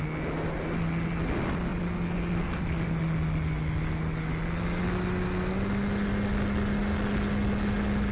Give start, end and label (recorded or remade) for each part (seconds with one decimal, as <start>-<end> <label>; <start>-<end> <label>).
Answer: 0.0-8.1 recorded